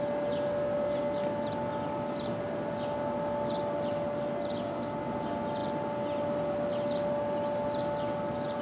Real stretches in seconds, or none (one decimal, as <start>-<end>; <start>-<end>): 0.0-8.6